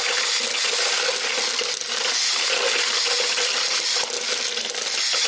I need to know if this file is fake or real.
real